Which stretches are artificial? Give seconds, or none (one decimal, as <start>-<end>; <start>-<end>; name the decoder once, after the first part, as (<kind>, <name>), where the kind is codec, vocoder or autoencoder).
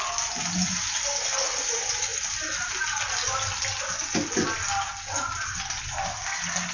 2.1-2.8 (vocoder, BigVGAN v2)